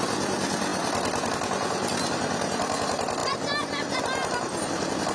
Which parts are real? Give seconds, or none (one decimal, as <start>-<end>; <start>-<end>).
0.0-5.1